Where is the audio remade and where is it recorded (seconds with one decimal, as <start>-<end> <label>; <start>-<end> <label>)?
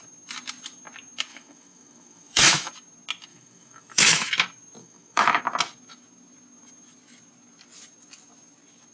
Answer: 0.0-1.3 recorded; 1.3-2.7 remade; 2.7-3.3 recorded; 3.3-4.3 remade; 4.3-4.8 recorded; 4.8-5.4 remade; 5.4-8.9 recorded